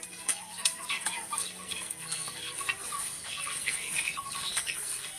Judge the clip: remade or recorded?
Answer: remade